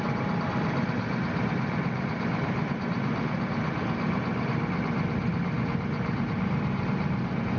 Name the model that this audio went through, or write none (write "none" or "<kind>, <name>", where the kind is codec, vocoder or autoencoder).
none